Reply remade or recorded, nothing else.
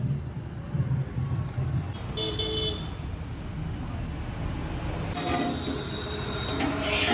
recorded